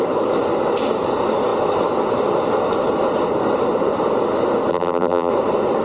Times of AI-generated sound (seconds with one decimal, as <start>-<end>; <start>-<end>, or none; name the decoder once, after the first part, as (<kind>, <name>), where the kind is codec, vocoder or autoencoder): 4.7-5.3 (vocoder, BigVGAN v2)